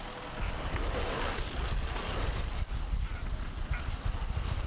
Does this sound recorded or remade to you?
recorded